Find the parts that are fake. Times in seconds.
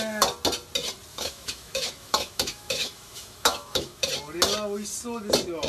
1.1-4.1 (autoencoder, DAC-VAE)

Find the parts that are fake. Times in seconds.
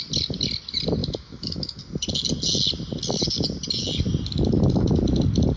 1.0-1.8 (autoencoder, DAC-VAE)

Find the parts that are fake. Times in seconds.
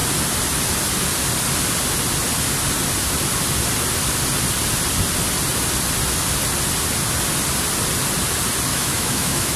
8.7-9.6 (autoencoder, DAC-VAE)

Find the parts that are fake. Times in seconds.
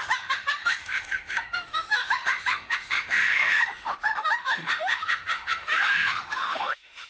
0.0-7.1 (autoencoder, DAC-VAE)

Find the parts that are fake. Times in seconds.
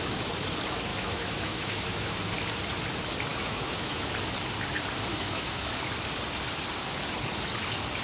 0.9-2.2 (autoencoder, DAC-VAE); 3.3-4.1; 5.1-5.7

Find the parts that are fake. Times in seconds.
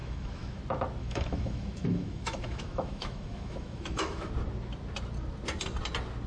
0.0-0.6 (autoencoder, DAC-VAE); 1.0-4.3